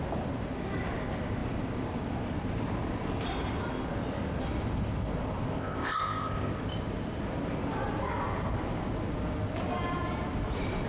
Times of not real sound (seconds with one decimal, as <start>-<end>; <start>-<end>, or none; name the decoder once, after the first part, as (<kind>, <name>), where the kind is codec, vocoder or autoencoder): 5.5-6.5 (codec, ZipCodec)